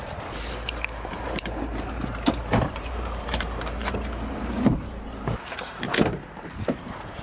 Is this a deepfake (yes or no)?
yes